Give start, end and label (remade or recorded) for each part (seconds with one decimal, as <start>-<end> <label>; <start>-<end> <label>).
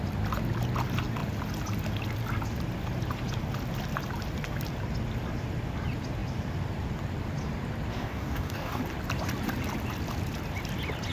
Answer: 0.0-7.9 recorded; 7.9-8.8 remade; 8.8-11.1 recorded